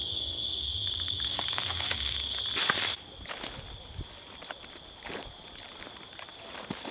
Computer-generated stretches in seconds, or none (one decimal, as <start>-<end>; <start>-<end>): 0.0-2.4

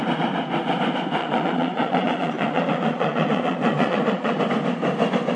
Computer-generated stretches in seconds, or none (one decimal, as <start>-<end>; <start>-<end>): 1.2-4.4